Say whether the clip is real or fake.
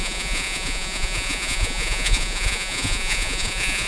fake